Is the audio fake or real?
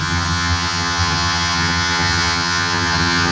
fake